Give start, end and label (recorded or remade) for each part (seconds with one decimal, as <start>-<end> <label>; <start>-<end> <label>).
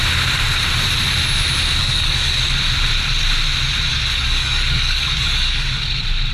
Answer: 0.0-1.8 recorded; 1.8-2.4 remade; 2.4-3.9 recorded; 3.9-5.8 remade; 5.8-6.3 recorded